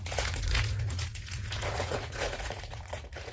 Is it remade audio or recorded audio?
remade